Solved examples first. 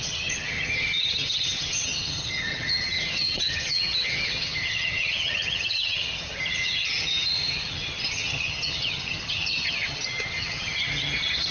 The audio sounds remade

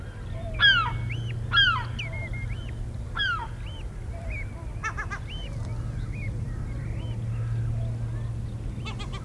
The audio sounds recorded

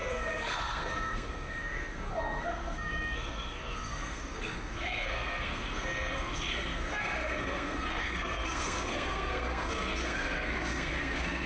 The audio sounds remade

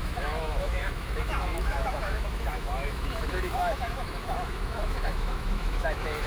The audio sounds remade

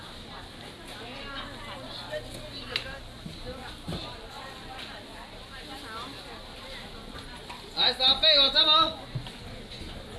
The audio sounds recorded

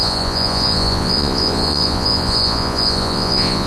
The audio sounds remade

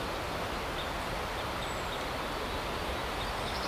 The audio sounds recorded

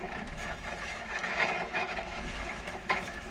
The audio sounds remade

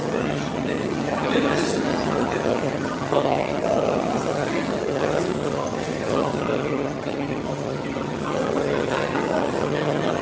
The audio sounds remade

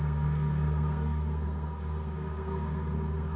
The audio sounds remade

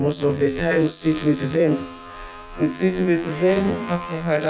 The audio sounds remade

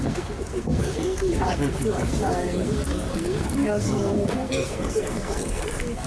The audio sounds remade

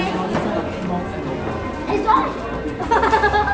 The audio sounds recorded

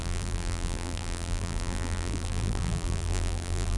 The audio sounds remade